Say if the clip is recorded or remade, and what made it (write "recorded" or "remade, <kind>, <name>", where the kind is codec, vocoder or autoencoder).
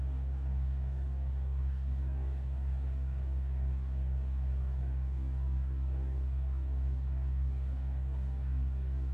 remade, codec, DAC